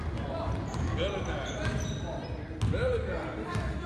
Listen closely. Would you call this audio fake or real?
real